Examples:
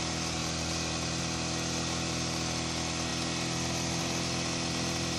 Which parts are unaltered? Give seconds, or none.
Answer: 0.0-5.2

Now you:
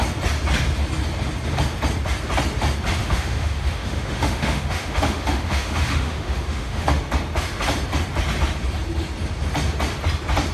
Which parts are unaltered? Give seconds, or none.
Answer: 0.0-3.0; 7.0-10.5

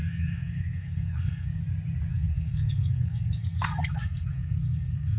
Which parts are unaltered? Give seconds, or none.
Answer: 1.6-2.1